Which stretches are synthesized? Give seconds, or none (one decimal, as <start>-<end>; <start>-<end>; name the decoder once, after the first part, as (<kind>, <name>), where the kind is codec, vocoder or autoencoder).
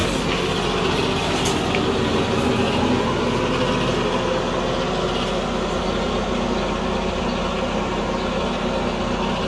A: none